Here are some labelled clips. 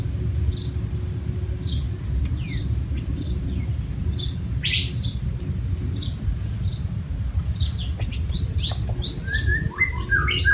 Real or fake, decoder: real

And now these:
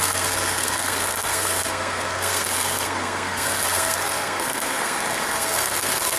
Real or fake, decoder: fake, codec, SNAC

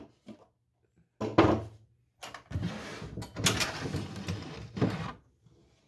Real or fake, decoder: real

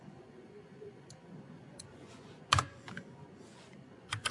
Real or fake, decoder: fake, vocoder, Vocos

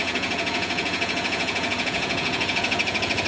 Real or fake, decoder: fake, vocoder, Vocos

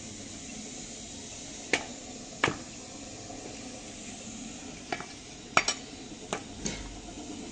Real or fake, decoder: real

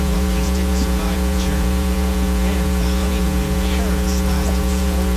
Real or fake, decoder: fake, vocoder, Vocos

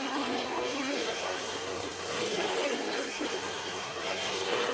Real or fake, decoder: fake, codec, SNAC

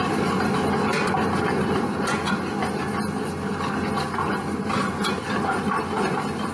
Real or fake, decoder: real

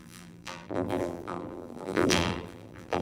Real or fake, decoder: fake, vocoder, BigVGAN v2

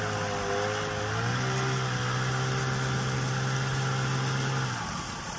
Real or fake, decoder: real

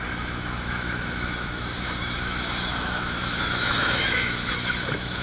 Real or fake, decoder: fake, autoencoder, DAC-VAE